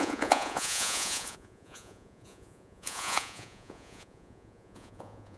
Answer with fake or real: fake